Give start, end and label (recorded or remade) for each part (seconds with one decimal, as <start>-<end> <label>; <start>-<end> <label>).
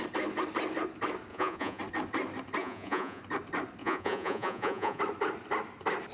0.0-1.3 recorded; 1.3-1.8 remade; 1.8-2.6 recorded; 2.6-3.2 remade; 3.2-3.8 recorded; 3.8-5.0 remade; 5.0-6.1 recorded